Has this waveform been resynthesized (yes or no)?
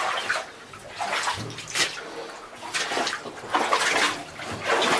no